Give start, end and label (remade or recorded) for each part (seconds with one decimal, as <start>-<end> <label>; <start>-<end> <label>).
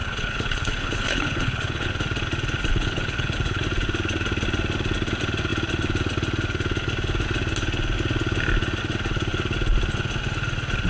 0.0-1.9 remade; 1.9-2.7 recorded; 2.7-3.6 remade; 3.6-10.9 recorded